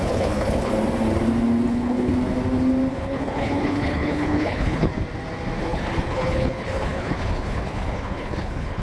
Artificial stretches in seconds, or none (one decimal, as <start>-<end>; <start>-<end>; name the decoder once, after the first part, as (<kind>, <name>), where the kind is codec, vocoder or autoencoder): 0.0-0.7 (codec, HILCodec); 1.7-2.1; 2.9-4.9; 5.6-8.8